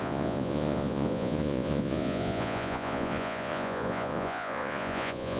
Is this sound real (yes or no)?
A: no